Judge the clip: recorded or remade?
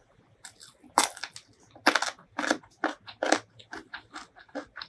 recorded